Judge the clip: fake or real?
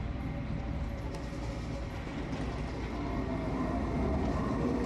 real